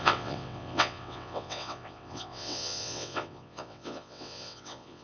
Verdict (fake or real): fake